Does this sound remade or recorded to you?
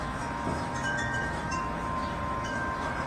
remade